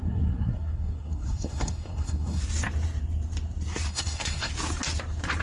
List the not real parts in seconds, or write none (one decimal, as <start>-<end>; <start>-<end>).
0.0-2.4; 3.9-4.5